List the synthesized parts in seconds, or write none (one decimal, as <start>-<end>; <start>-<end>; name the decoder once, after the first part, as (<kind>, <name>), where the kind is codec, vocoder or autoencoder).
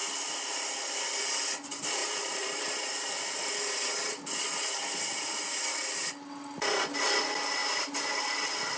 none